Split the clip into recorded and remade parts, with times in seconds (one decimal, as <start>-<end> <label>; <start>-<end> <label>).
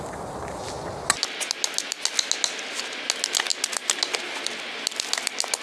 0.0-5.6 recorded